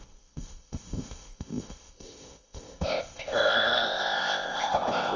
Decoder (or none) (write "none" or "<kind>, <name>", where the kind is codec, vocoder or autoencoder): codec, ZipCodec